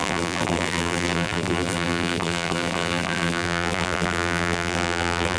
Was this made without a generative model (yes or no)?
no